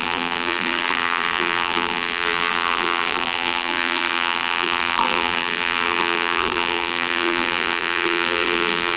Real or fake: fake